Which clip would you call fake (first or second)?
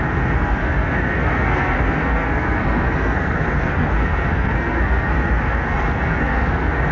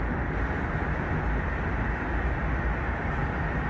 first